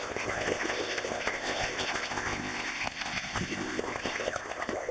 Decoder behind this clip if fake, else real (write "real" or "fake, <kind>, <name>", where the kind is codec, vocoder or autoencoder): fake, codec, ZipCodec